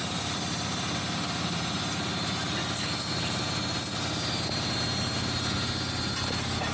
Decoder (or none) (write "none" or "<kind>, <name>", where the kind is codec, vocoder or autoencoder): none